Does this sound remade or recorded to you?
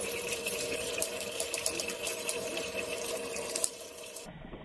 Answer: remade